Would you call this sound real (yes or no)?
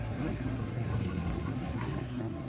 no